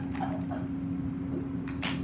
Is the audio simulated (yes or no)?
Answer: no